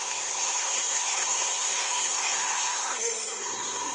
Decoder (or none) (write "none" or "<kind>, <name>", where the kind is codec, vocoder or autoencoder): codec, SNAC